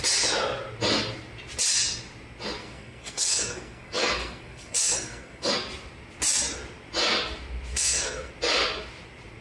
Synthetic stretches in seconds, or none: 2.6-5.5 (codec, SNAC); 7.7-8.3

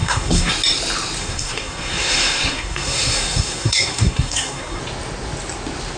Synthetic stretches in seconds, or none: 0.0-0.5 (codec, SNAC); 1.2-4.8

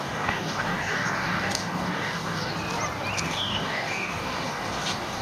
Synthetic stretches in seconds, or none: 0.0-2.5 (codec, DAC); 3.2-5.2

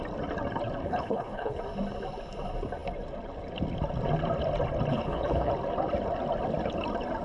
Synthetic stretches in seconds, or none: 0.8-1.6 (codec, HILCodec); 4.9-5.5

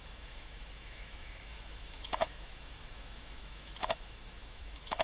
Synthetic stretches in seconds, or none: 0.0-5.0 (autoencoder, DAC-VAE)

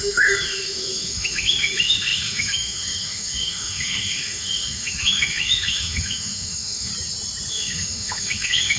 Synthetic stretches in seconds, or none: 0.0-6.9 (autoencoder, DAC-VAE); 7.5-8.8

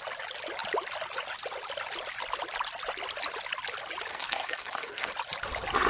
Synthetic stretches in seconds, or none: 4.1-5.1 (codec, SNAC)